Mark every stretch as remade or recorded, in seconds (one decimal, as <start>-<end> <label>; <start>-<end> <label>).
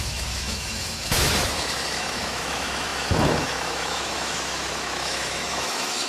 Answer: 0.0-6.1 remade